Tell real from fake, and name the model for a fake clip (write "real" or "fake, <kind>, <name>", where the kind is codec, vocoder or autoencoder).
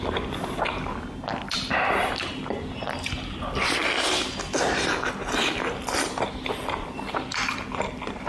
real